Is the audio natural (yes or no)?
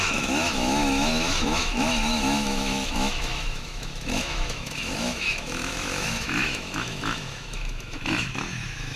no